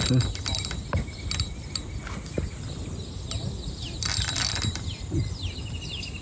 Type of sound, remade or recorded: recorded